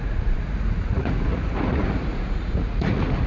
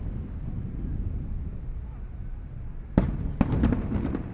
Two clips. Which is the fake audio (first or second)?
first